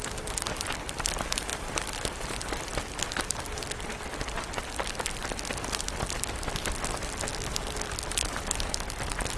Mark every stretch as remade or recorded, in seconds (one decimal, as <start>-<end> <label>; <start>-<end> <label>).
0.0-9.4 recorded